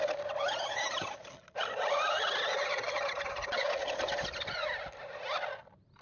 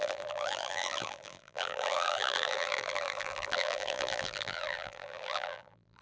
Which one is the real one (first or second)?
first